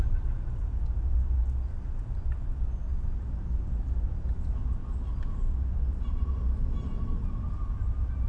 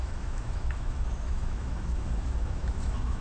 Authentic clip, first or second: first